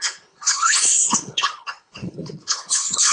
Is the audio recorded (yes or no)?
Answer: no